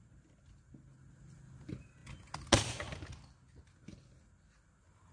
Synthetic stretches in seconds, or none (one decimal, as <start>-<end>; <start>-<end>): none